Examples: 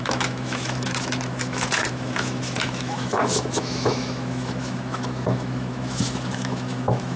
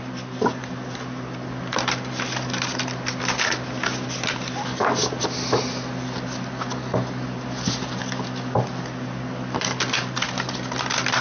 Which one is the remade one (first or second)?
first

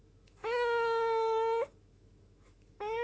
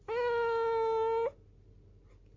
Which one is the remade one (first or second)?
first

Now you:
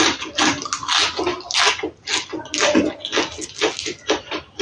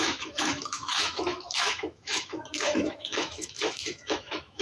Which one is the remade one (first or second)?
second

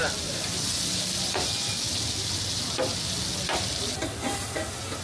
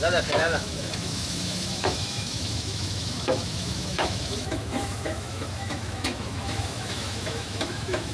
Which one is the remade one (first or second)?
second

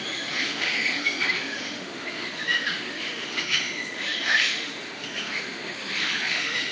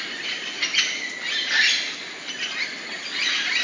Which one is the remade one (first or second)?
first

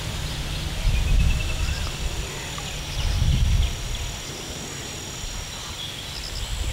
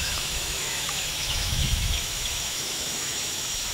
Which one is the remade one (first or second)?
second